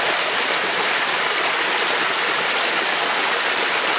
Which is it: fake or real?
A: real